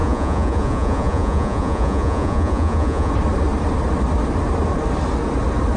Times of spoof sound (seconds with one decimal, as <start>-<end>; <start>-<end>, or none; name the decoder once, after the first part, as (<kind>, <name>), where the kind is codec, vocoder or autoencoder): 0.0-3.1 (vocoder, Vocos)